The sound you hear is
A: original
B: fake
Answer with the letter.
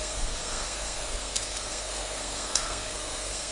B